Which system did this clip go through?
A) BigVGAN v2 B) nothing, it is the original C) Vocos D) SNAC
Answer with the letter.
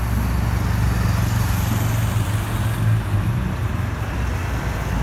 B